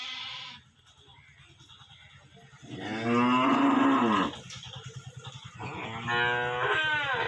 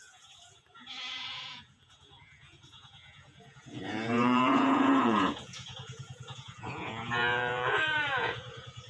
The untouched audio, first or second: first